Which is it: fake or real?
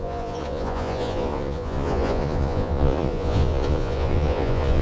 fake